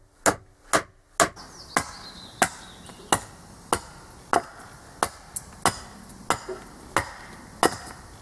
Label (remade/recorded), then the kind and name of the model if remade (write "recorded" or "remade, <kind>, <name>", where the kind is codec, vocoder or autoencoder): recorded